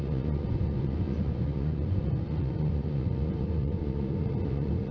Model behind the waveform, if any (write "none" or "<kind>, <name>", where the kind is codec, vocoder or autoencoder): vocoder, Vocos